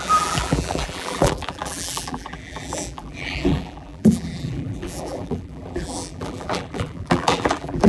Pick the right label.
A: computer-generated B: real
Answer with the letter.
A